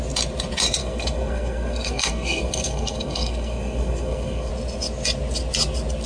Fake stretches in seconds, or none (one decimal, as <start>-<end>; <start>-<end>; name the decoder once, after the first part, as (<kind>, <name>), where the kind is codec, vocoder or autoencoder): 0.8-4.5 (codec, SNAC)